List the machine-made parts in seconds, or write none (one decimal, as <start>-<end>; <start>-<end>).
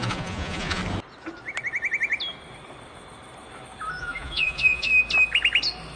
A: 0.0-0.8; 4.0-4.9